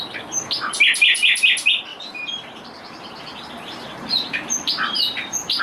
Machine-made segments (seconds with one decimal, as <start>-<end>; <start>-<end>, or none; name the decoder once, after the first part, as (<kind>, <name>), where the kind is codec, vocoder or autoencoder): 1.9-5.6 (vocoder, BigVGAN v2)